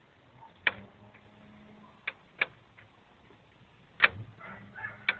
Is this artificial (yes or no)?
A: no